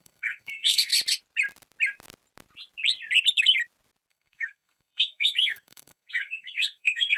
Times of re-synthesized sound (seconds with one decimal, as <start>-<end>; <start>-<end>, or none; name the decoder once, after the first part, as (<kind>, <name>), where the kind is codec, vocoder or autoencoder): 0.0-0.9 (codec, SNAC); 4.1-7.2